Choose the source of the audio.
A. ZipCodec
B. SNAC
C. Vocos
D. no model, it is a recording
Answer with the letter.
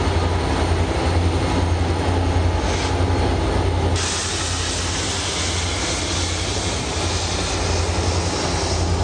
D